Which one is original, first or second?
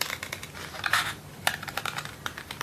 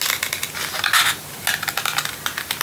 second